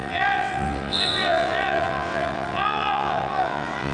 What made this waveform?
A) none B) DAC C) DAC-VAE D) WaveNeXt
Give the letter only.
D